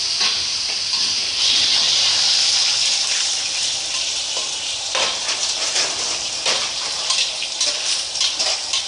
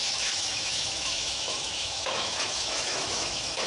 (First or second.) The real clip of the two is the first